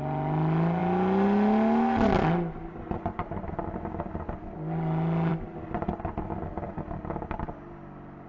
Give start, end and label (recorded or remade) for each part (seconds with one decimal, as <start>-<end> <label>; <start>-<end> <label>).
0.0-8.3 recorded